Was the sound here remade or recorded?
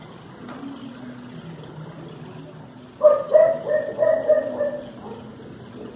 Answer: recorded